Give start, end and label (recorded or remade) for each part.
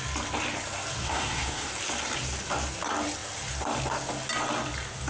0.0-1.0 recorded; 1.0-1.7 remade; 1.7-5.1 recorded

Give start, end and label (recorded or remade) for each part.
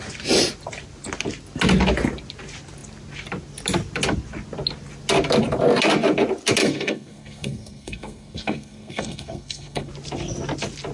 0.0-6.6 recorded; 6.6-9.9 remade; 9.9-10.9 recorded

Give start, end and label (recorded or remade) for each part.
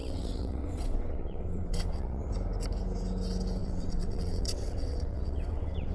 0.0-2.3 remade; 2.3-3.6 recorded; 3.6-5.9 remade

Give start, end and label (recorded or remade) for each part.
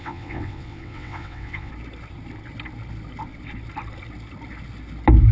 0.0-1.7 remade; 1.7-5.3 recorded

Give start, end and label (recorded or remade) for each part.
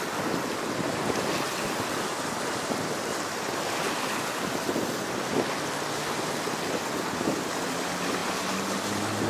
0.0-9.3 recorded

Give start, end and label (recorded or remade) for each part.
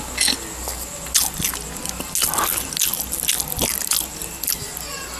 0.0-5.2 recorded